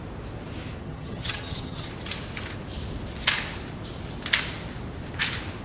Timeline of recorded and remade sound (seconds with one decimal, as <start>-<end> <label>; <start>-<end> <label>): 0.0-0.8 recorded; 0.8-1.9 remade; 1.9-5.6 recorded